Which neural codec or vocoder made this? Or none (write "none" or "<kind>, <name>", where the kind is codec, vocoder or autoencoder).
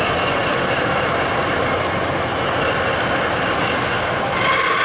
none